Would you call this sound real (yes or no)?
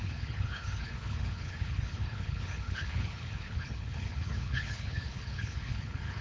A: no